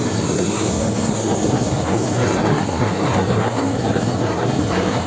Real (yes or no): no